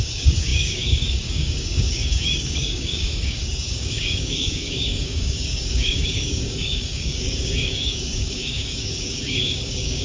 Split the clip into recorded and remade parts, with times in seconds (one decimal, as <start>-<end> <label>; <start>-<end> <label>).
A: 0.0-10.0 remade